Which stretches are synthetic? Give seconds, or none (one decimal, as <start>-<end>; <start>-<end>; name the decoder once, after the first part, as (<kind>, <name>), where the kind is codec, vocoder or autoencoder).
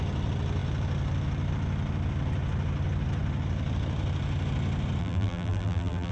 5.0-6.1 (vocoder, BigVGAN v2)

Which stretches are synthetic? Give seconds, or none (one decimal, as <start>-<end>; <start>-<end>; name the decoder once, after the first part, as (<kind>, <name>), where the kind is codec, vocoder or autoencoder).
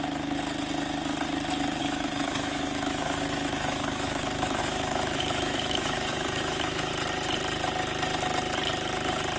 1.8-6.9 (autoencoder, DAC-VAE)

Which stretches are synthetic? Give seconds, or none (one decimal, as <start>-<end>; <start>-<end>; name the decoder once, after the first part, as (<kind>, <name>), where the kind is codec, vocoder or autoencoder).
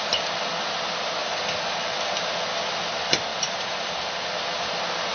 3.3-4.1 (vocoder, BigVGAN v2)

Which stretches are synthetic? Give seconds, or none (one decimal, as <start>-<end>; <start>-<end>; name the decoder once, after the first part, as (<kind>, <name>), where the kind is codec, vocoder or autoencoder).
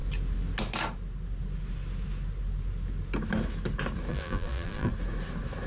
4.1-4.9 (vocoder, BigVGAN v2)